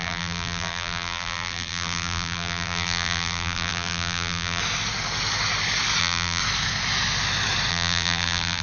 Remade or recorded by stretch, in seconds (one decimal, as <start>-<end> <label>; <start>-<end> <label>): 0.0-4.6 remade; 4.6-6.0 recorded; 6.0-6.4 remade; 6.4-7.7 recorded; 7.7-8.6 remade